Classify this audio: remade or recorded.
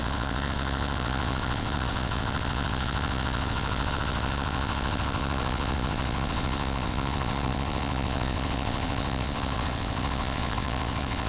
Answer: remade